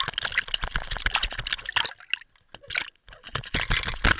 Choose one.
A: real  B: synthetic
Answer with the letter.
A